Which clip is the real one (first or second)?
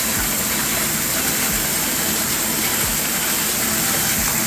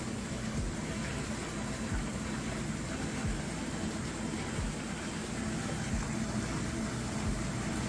second